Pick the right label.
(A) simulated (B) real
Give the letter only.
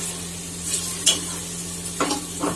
B